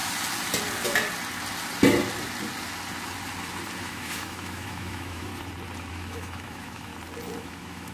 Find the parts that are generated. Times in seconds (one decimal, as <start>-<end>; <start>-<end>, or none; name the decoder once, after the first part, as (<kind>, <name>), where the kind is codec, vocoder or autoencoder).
3.8-5.3 (autoencoder, DAC-VAE); 5.9-6.9; 7.4-7.9